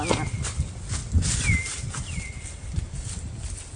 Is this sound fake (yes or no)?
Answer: no